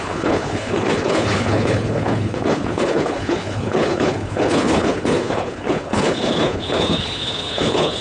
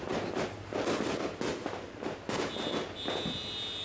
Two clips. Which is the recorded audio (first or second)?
second